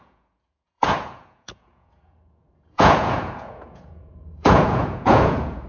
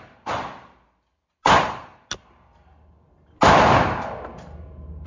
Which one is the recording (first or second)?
second